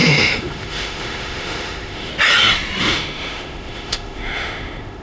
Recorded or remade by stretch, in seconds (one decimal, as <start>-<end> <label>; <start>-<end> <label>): 0.0-2.1 remade; 2.1-2.8 recorded; 2.8-5.0 remade